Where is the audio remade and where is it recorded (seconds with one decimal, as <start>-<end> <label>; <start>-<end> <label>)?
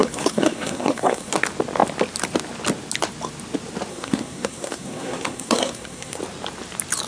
0.0-1.3 remade; 1.3-3.9 recorded; 3.9-6.2 remade; 6.2-7.1 recorded